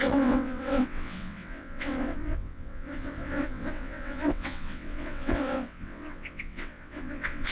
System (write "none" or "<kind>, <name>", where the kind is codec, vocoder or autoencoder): vocoder, WaveNeXt